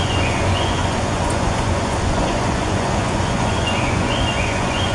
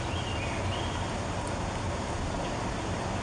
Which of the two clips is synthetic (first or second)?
first